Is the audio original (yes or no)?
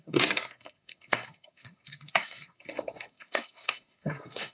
no